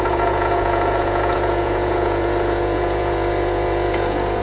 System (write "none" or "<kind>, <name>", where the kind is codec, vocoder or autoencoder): vocoder, Vocos